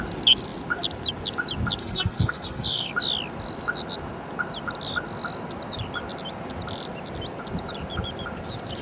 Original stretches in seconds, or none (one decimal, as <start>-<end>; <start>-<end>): 0.0-1.8; 2.9-8.8